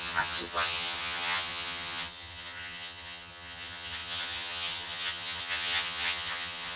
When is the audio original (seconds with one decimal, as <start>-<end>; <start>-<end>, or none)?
none